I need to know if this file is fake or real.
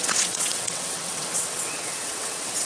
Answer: fake